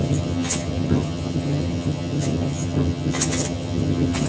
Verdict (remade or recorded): remade